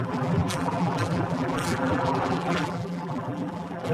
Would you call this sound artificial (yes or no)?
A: yes